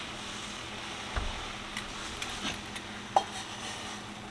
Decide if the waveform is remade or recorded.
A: recorded